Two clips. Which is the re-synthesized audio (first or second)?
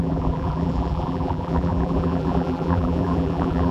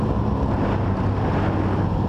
first